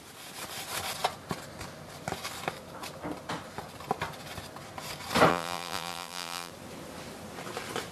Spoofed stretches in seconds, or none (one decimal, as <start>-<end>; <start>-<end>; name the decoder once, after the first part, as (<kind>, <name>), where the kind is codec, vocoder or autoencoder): 5.3-6.5 (vocoder, BigVGAN v2)